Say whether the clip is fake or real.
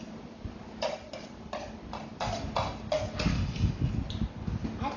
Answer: real